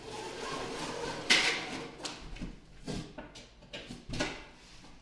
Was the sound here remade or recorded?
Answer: recorded